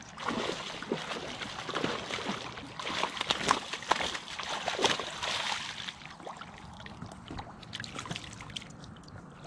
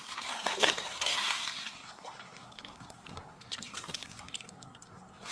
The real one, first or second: first